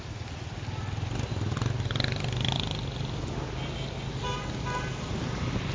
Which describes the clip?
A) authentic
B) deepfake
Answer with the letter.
A